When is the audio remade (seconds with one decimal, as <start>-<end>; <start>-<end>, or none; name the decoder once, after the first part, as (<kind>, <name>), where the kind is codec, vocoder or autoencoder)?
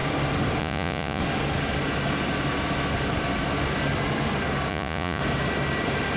0.6-1.2 (vocoder, Vocos); 4.7-5.2